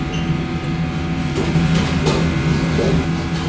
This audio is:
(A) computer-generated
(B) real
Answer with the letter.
B